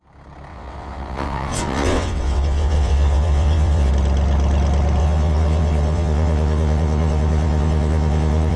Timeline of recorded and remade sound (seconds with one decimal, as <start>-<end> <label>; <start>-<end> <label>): 0.0-0.5 recorded; 0.5-3.9 remade; 3.9-5.0 recorded; 5.0-8.6 remade